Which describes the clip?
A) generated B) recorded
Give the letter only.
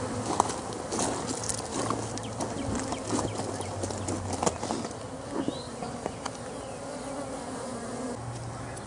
B